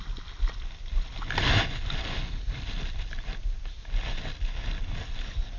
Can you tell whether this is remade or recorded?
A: recorded